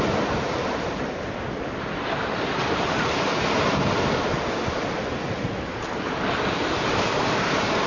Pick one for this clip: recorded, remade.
recorded